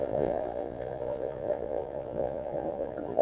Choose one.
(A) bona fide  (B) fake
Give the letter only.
B